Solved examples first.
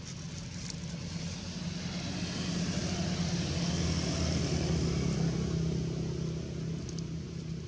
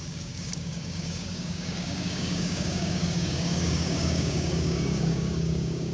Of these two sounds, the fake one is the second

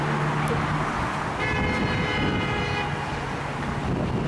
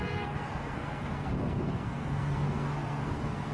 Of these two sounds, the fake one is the second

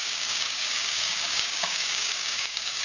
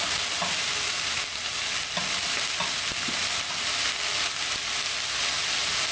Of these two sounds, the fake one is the first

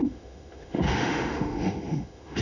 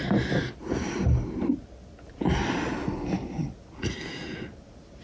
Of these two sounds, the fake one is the first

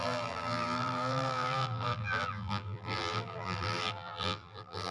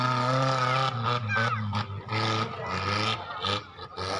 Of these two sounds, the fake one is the first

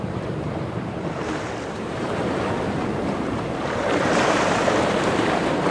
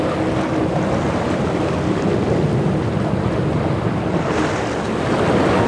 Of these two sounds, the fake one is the first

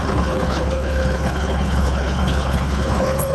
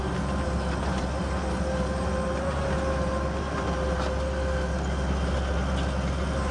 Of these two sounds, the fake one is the first